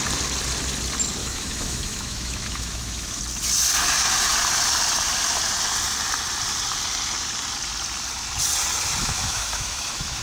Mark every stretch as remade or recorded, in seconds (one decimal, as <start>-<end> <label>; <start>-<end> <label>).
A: 0.0-1.2 recorded; 1.2-3.2 remade; 3.2-9.0 recorded; 9.0-10.2 remade

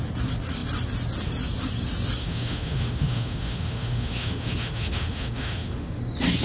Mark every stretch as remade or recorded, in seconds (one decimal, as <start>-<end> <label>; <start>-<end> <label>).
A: 0.0-2.2 recorded; 2.2-6.0 remade; 6.0-6.4 recorded